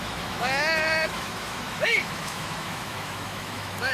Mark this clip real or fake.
fake